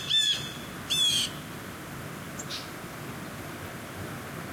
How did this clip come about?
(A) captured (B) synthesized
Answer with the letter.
A